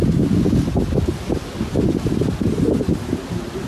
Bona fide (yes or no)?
yes